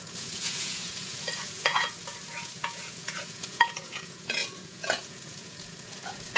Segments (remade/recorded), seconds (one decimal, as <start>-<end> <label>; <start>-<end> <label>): 0.0-6.4 remade